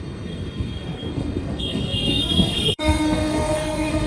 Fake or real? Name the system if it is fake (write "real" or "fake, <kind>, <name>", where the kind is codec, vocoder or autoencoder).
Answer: fake, codec, SNAC